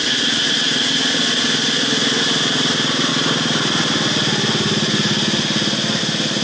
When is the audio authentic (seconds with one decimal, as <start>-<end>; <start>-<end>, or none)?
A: 3.1-6.0